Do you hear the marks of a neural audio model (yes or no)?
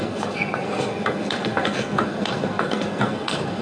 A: yes